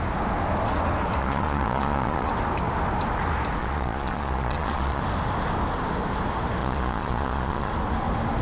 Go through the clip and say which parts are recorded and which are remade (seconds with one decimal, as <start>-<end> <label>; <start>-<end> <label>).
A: 0.0-1.2 recorded; 1.2-2.3 remade; 2.3-3.6 recorded; 3.6-5.0 remade; 5.0-6.6 recorded; 6.6-7.7 remade; 7.7-8.4 recorded